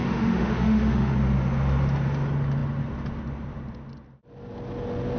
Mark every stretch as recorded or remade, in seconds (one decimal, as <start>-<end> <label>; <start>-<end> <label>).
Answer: 0.0-1.1 remade; 1.1-5.2 recorded